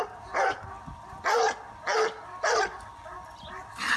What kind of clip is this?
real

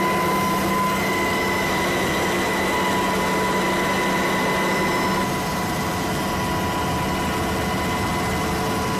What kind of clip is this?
real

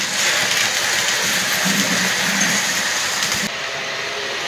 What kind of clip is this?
real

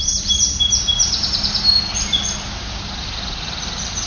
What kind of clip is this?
real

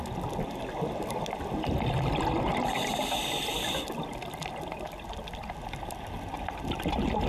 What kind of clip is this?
real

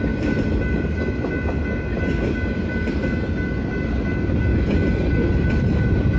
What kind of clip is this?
real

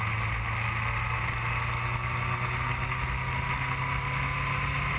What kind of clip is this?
real